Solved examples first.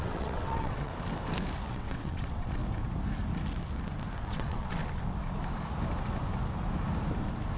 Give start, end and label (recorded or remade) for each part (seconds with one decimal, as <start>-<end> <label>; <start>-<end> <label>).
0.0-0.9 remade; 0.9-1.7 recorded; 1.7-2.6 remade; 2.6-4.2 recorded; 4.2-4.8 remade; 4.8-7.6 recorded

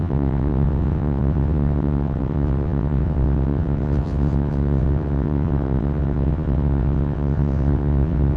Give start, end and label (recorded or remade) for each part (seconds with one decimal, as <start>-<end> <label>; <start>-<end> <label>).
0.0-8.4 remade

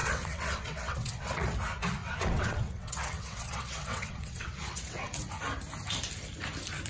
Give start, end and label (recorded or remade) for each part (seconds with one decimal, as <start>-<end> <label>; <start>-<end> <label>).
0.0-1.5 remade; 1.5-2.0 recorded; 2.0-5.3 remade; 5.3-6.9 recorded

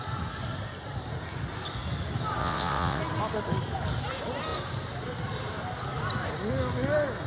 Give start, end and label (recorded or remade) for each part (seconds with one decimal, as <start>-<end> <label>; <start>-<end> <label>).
0.0-2.4 recorded; 2.4-3.0 remade; 3.0-7.3 recorded

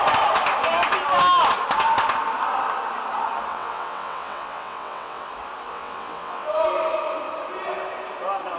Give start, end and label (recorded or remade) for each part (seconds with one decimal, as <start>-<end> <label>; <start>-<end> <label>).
0.0-3.5 recorded; 3.5-5.3 remade; 5.3-5.7 recorded; 5.7-6.5 remade; 6.5-8.6 recorded

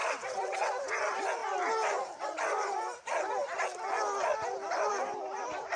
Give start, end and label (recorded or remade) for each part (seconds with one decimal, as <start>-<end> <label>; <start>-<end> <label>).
0.0-0.7 remade; 0.7-5.8 recorded

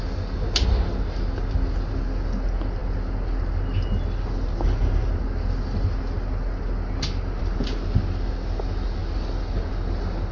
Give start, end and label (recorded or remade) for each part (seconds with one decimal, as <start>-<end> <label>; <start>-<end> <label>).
0.0-10.3 recorded

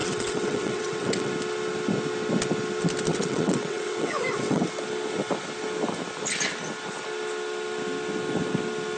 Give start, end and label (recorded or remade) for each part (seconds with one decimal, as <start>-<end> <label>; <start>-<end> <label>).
0.0-1.3 remade; 1.3-3.1 recorded; 3.1-4.6 remade; 4.6-9.0 recorded